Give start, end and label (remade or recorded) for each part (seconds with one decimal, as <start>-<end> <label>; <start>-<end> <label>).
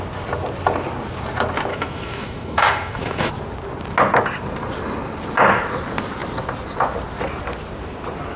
0.0-1.7 recorded; 1.7-3.3 remade; 3.3-8.4 recorded